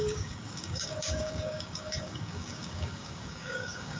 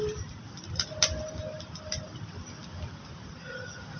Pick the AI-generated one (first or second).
first